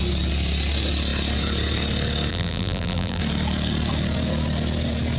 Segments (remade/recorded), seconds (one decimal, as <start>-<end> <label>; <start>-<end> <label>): 0.0-2.3 recorded; 2.3-3.2 remade; 3.2-5.2 recorded